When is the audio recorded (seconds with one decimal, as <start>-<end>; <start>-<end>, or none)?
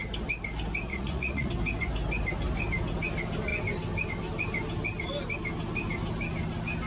0.0-0.9; 1.5-6.9